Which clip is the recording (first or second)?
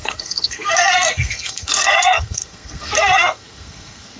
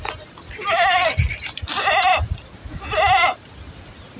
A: second